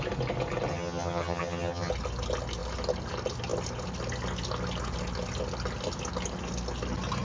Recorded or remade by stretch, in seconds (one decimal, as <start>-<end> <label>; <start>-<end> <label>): 0.0-0.7 recorded; 0.7-1.9 remade; 1.9-7.2 recorded